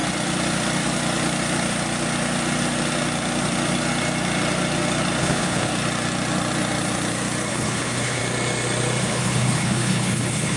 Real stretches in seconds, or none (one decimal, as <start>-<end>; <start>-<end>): 0.0-5.2; 5.7-7.5; 8.2-9.0